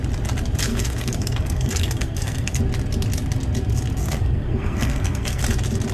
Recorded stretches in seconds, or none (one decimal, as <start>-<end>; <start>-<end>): 0.0-0.7; 2.6-4.0; 5.4-5.9